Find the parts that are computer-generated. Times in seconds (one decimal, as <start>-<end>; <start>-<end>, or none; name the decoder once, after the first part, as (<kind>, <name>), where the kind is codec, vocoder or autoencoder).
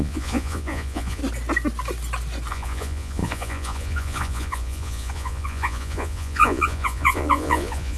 0.0-1.2 (vocoder, Vocos); 2.5-8.0